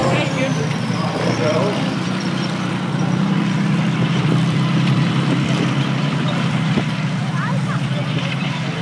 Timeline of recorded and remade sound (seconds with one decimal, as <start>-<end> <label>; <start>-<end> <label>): 0.0-7.2 remade; 7.2-8.3 recorded; 8.3-8.8 remade